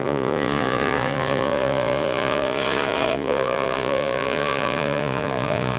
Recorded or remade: remade